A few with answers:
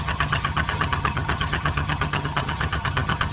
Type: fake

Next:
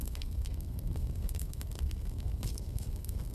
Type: fake